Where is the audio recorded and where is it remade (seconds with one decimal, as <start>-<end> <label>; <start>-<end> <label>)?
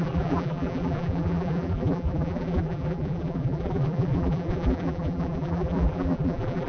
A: 0.0-6.7 remade